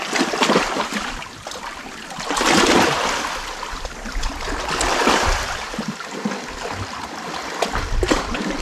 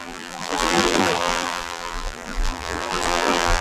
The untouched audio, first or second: first